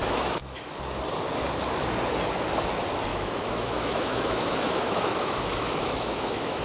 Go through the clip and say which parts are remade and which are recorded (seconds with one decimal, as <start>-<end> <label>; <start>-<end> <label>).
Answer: 0.0-0.7 remade; 0.7-3.1 recorded; 3.1-6.6 remade